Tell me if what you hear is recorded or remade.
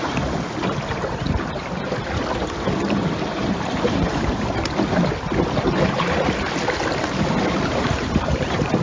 recorded